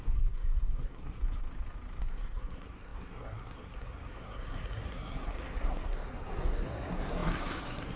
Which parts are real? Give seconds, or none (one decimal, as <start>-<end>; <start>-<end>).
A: 1.2-2.0